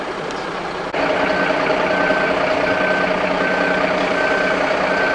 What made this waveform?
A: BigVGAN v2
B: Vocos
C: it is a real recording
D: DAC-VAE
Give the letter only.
C